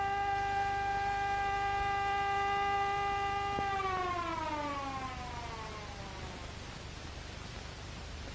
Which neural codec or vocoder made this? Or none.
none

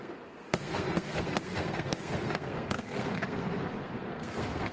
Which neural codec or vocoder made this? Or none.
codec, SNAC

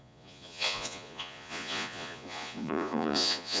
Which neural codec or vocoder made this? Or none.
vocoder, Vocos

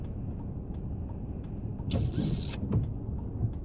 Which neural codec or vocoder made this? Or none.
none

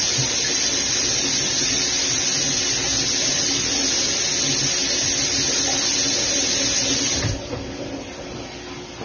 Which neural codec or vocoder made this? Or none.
none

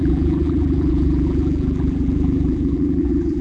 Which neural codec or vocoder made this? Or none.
vocoder, BigVGAN v2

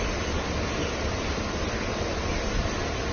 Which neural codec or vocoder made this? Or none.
none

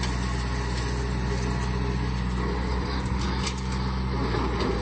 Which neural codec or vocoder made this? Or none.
none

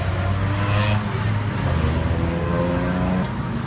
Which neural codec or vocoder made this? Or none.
none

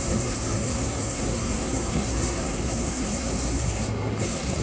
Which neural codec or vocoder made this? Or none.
codec, SNAC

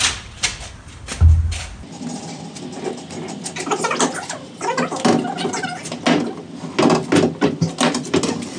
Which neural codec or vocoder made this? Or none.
none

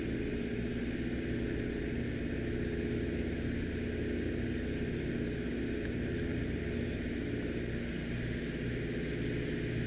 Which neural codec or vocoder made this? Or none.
none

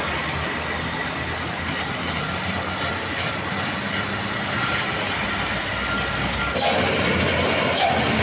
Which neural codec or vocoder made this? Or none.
none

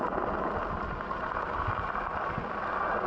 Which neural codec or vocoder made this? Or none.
none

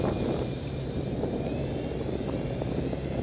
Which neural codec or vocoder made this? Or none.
vocoder, BigVGAN v2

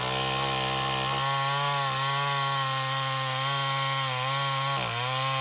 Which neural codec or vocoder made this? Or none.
none